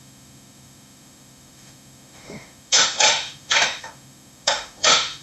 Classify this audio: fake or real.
fake